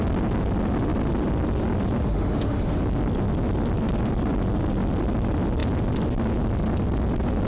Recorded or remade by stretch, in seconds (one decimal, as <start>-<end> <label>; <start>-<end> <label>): 0.0-2.0 recorded; 2.0-2.8 remade; 2.8-7.5 recorded